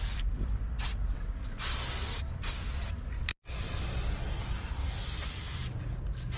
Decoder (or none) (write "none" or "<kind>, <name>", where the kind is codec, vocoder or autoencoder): none